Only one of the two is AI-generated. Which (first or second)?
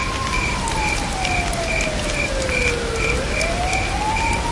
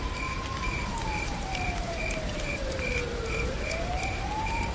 second